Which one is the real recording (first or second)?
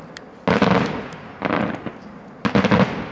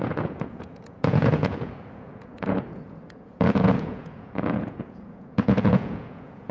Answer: first